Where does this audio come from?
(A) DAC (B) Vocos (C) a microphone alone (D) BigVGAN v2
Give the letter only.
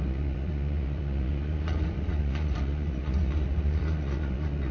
B